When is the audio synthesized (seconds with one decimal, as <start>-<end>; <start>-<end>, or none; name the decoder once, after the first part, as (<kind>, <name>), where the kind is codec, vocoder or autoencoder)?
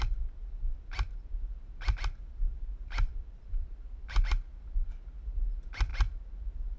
0.4-4.5 (vocoder, BigVGAN v2)